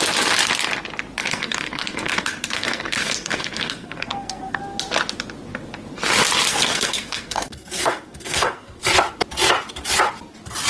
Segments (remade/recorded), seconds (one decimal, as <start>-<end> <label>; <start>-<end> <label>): 0.0-1.2 recorded; 1.2-4.6 remade; 4.6-6.5 recorded; 6.5-8.8 remade; 8.8-10.7 recorded